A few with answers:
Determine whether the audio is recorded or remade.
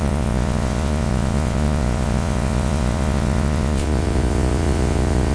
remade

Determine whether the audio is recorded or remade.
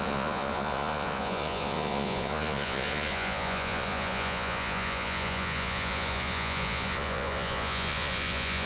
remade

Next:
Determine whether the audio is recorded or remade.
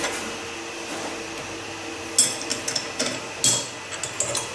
recorded